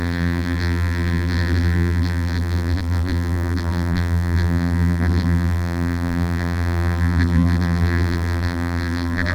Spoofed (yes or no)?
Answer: yes